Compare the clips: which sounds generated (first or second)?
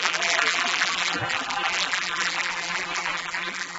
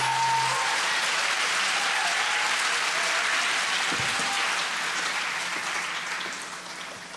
first